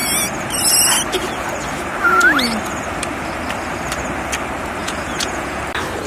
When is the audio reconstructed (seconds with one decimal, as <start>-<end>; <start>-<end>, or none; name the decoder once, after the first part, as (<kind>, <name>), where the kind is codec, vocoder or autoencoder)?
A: 4.8-5.6 (vocoder, Vocos)